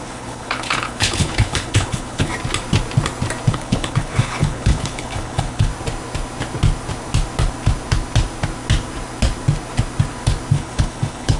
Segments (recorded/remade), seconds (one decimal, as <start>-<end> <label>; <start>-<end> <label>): 0.0-2.3 remade; 2.3-3.5 recorded; 3.5-5.7 remade; 5.7-10.5 recorded; 10.5-11.4 remade